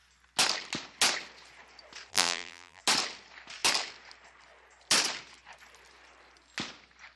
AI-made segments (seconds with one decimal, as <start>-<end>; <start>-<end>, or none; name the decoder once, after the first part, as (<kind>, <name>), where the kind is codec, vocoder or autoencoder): 2.1-2.8 (vocoder, BigVGAN v2)